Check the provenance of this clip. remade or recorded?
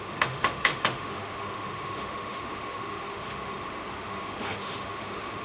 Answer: remade